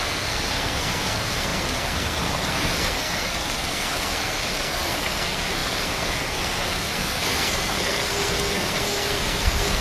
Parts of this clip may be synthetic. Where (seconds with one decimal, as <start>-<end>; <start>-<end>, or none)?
0.0-9.8